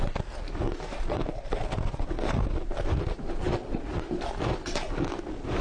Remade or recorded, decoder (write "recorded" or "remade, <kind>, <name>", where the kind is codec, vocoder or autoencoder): recorded